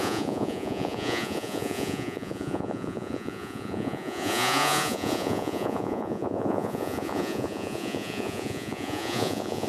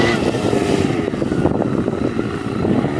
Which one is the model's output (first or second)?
first